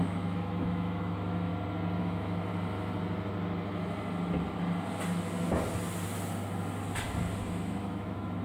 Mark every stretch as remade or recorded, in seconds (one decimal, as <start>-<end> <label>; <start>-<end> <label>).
0.0-1.5 remade; 1.5-2.0 recorded; 2.0-2.5 remade; 2.5-7.5 recorded; 7.5-8.4 remade